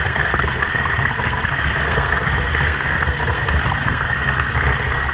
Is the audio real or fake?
fake